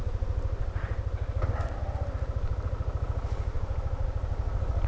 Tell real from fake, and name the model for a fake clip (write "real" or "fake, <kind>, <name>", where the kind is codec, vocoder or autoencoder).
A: fake, vocoder, BigVGAN v2